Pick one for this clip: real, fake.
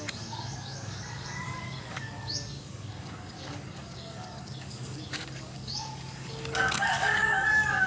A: fake